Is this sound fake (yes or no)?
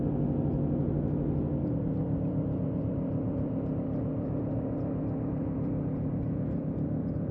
no